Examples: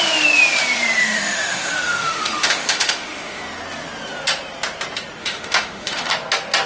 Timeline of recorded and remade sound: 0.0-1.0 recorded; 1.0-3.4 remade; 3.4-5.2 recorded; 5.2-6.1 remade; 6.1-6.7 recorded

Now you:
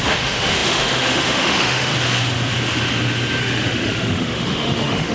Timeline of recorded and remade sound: 0.0-1.9 remade; 1.9-3.4 recorded; 3.4-5.1 remade

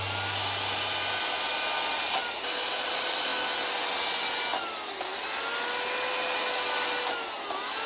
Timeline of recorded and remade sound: 0.0-7.9 recorded

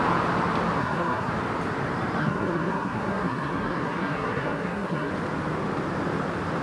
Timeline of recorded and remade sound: 0.0-0.8 recorded; 0.8-1.3 remade; 1.3-2.2 recorded; 2.2-5.1 remade; 5.1-6.6 recorded